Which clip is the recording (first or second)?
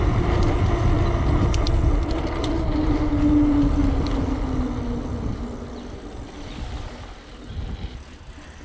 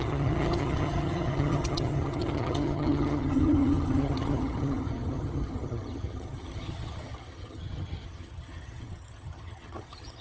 first